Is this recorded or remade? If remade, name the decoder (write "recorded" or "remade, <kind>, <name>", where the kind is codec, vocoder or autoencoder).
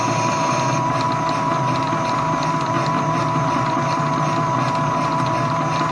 recorded